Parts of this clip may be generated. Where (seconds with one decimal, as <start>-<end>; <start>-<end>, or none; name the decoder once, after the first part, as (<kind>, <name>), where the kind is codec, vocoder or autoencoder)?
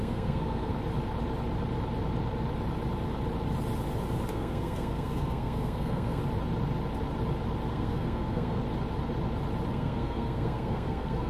0.0-0.7 (codec, SNAC); 4.3-6.2; 7.7-8.6; 9.7-11.3